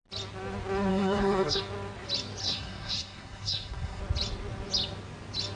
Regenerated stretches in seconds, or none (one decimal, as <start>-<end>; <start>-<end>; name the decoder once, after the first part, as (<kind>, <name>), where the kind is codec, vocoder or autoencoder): 0.9-1.6 (codec, SNAC); 2.4-4.0